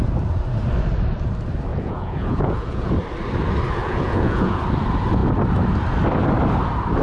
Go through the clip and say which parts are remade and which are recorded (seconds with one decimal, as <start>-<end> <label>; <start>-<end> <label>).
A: 0.0-1.7 recorded; 1.7-2.9 remade; 2.9-3.8 recorded; 3.8-4.6 remade; 4.6-7.0 recorded